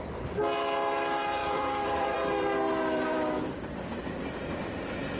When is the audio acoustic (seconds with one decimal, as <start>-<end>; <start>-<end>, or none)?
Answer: 0.0-1.4; 4.5-5.2